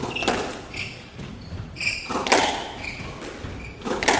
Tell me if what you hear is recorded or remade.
recorded